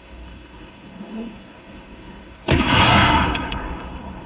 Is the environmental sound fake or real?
fake